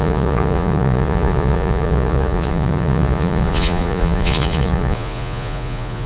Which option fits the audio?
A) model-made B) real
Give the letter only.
A